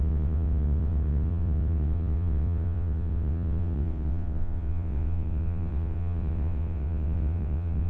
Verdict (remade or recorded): remade